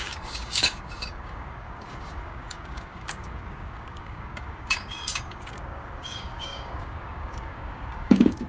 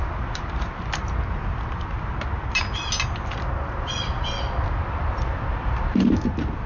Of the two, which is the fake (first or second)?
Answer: first